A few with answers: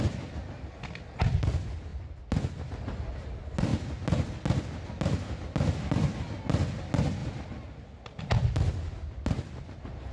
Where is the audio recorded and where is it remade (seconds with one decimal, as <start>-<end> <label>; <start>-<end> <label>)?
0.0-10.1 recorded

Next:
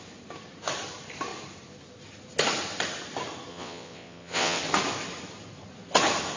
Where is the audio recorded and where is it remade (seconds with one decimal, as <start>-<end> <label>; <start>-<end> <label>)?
0.0-3.5 recorded; 3.5-4.6 remade; 4.6-6.4 recorded

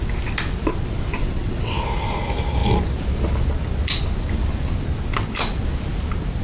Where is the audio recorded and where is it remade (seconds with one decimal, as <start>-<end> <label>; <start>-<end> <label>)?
0.0-1.2 recorded; 1.2-1.8 remade; 1.8-6.4 recorded